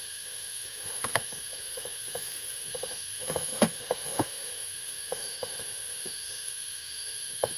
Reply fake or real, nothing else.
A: fake